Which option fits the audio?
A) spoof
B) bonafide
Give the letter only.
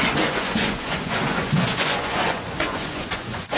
A